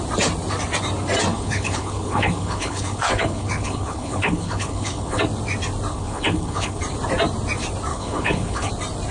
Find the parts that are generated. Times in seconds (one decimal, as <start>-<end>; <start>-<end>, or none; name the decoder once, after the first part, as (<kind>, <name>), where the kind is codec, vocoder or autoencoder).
1.3-5.2 (codec, HILCodec); 5.9-6.8; 7.9-8.7